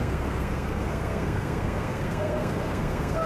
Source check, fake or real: fake